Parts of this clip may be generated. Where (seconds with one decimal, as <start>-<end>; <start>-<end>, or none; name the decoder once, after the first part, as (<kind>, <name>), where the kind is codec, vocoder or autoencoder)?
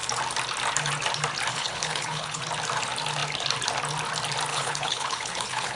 1.5-2.4 (codec, HILCodec); 4.5-5.8